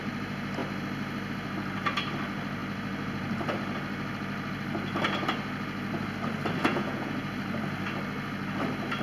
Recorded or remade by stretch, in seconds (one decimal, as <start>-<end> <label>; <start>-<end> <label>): 0.0-6.6 recorded; 6.6-7.1 remade; 7.1-9.0 recorded